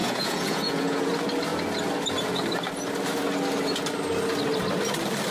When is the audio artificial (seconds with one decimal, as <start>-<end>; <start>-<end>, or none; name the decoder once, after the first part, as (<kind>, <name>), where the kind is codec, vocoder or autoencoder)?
0.0-1.1 (vocoder, Vocos)